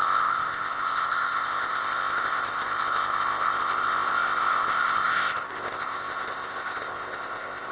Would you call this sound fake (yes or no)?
yes